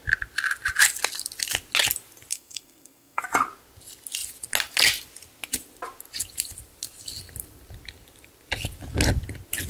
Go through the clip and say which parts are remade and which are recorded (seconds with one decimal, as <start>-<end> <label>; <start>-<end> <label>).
0.0-2.3 recorded; 2.3-3.2 remade; 3.2-9.7 recorded